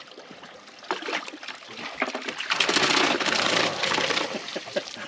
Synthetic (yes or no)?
yes